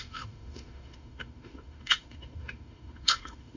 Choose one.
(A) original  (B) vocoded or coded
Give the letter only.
B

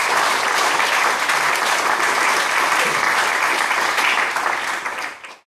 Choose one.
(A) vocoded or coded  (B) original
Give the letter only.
B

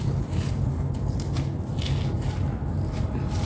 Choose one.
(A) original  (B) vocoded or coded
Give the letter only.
A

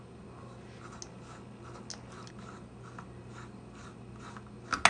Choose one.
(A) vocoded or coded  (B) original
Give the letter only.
B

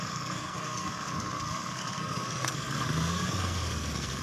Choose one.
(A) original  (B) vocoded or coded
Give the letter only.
B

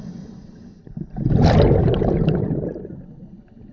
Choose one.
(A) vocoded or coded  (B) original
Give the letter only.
B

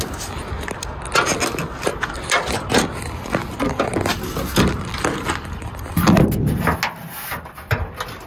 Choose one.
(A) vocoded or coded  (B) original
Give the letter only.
B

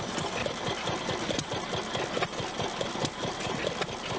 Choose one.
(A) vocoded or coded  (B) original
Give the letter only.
B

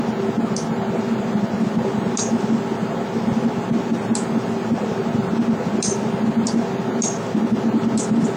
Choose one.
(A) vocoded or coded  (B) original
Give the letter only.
B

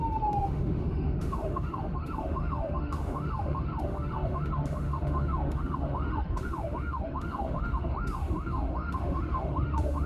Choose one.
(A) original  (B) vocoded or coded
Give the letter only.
B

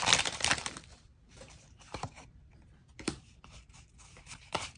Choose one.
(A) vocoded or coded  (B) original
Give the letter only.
A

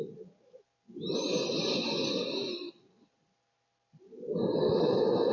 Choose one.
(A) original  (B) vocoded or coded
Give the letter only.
A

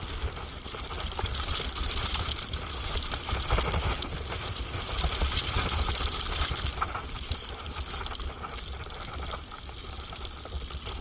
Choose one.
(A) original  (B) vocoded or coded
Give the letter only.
A